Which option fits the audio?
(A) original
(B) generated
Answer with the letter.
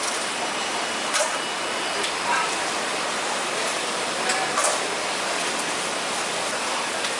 A